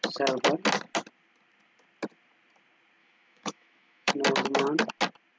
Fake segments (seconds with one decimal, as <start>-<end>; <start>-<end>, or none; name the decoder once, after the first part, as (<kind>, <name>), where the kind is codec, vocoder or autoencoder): 3.0-4.1 (autoencoder, DAC-VAE)